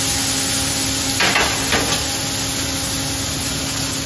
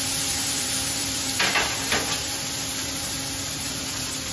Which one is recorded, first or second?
first